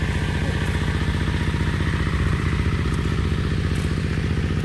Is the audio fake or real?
real